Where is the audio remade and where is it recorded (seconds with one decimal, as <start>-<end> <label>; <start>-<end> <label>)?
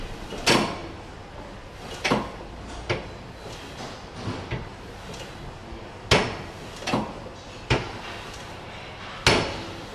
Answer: 0.0-9.9 recorded